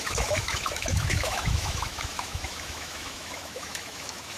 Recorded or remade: remade